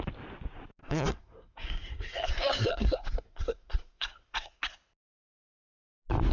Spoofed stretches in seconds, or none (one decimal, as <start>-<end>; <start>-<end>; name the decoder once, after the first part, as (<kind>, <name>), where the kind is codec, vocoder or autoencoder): 0.8-4.6 (codec, SNAC)